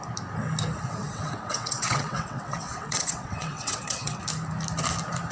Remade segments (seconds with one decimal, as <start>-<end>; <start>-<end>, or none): 1.0-4.2